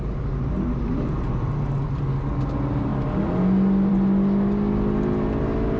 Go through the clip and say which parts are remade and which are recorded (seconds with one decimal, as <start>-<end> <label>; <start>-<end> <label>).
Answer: 0.0-5.8 recorded